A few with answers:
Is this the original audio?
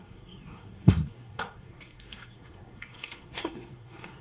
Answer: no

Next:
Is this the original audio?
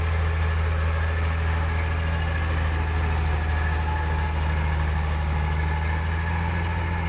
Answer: yes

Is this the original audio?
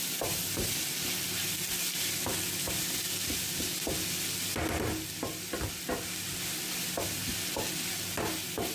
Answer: yes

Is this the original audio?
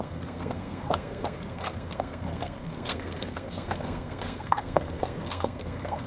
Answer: no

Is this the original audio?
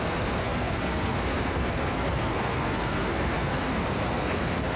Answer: no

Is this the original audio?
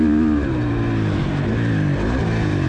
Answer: yes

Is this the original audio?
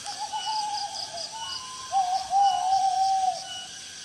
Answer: yes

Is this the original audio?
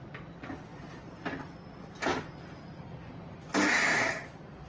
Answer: yes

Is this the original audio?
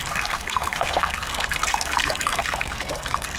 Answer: no